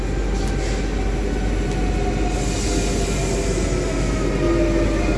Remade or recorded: recorded